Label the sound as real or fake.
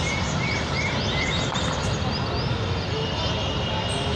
real